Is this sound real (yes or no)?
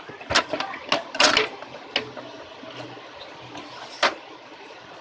yes